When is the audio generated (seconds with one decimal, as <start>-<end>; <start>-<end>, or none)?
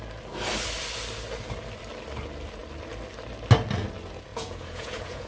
4.3-5.3